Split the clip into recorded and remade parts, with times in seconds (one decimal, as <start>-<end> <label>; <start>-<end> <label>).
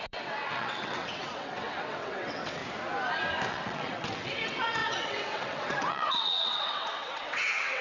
0.0-2.6 remade; 2.6-3.5 recorded; 3.5-7.8 remade